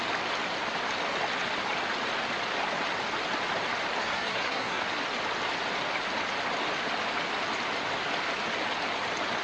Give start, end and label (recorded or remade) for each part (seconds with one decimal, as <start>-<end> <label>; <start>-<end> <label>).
0.0-4.0 recorded; 4.0-4.8 remade; 4.8-9.4 recorded